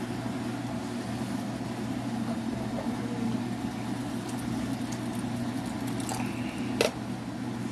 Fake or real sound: real